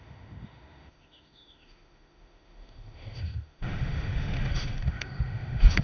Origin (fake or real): fake